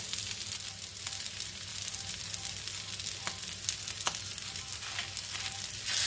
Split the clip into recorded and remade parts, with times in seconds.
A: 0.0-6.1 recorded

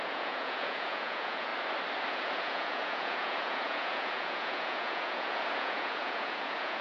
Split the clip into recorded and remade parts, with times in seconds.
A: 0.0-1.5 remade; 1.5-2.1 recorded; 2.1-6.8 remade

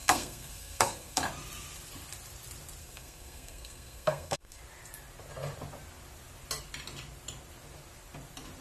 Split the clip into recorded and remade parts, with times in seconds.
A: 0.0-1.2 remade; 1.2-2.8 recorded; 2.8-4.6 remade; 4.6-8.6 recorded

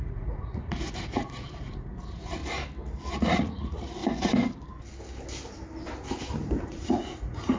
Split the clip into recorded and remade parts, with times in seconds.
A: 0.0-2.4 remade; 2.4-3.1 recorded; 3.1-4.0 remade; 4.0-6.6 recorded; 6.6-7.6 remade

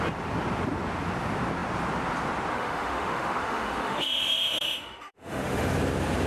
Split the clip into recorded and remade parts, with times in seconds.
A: 0.0-2.5 recorded; 2.5-5.7 remade; 5.7-6.3 recorded

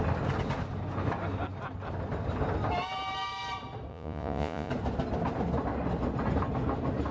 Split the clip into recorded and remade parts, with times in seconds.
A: 0.0-3.9 recorded; 3.9-4.7 remade; 4.7-7.1 recorded

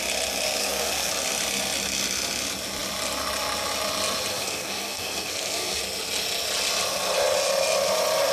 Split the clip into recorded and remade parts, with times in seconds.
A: 0.0-0.6 recorded; 0.6-1.1 remade; 1.1-4.3 recorded; 4.3-5.8 remade; 5.8-8.3 recorded